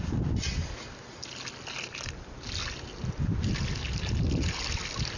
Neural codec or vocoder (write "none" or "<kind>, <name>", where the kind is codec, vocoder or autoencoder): none